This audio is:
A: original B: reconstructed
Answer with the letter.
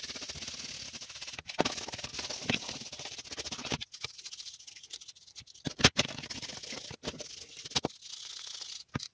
A